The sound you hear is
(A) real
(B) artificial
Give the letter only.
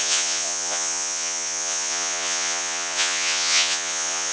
B